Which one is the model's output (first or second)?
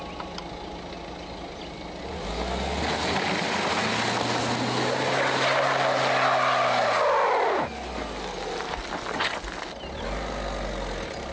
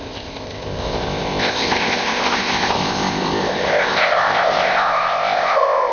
second